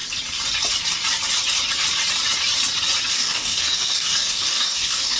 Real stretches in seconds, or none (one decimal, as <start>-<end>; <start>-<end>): 0.0-3.1